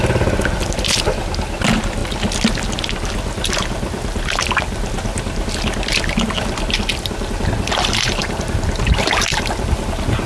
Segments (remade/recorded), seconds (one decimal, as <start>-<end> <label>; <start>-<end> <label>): 0.0-10.3 recorded